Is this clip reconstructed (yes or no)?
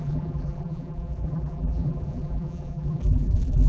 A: yes